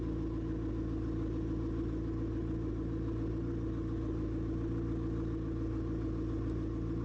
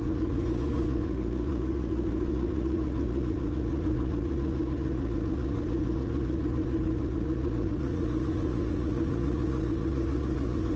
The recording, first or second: first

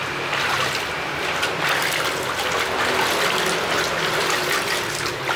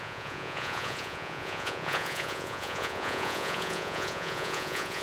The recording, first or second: first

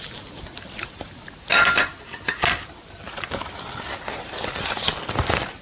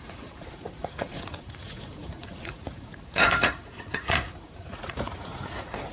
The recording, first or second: first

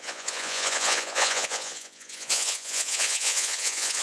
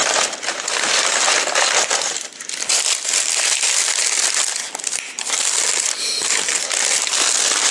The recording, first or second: second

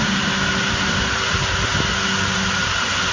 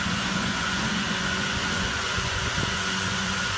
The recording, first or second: first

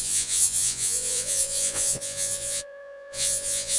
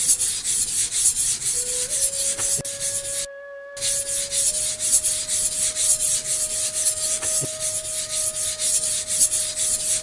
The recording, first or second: second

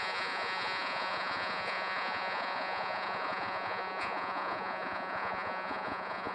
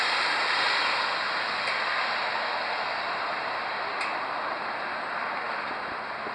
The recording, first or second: second